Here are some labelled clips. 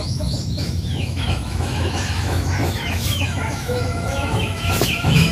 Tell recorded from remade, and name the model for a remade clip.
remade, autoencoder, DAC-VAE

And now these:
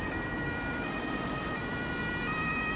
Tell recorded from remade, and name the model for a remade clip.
recorded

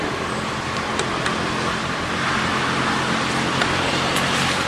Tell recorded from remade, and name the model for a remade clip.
recorded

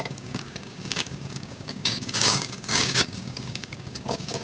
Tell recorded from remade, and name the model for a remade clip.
remade, codec, DAC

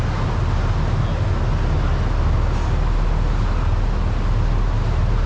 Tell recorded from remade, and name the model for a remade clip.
recorded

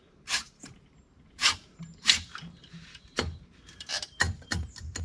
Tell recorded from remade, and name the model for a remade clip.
remade, vocoder, BigVGAN v2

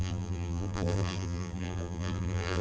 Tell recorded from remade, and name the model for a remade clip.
remade, vocoder, BigVGAN v2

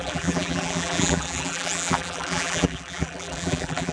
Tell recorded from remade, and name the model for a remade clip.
remade, vocoder, BigVGAN v2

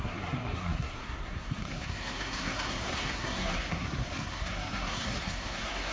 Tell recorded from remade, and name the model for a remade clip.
remade, codec, SNAC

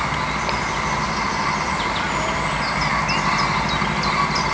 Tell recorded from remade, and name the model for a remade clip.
recorded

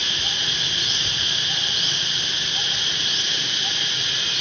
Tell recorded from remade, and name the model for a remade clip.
recorded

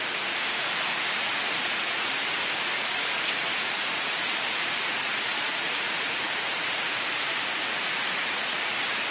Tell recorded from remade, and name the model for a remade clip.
remade, vocoder, Vocos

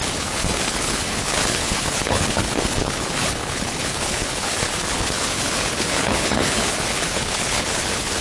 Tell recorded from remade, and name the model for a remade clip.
remade, codec, HILCodec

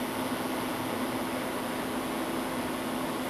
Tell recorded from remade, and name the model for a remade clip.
recorded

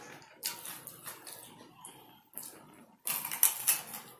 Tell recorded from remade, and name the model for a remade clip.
recorded